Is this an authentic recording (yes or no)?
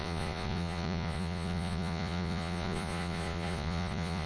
no